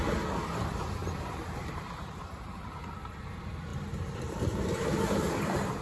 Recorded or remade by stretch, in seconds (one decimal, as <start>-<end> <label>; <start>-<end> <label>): 0.0-1.0 recorded; 1.0-2.7 remade; 2.7-3.7 recorded; 3.7-5.3 remade; 5.3-5.8 recorded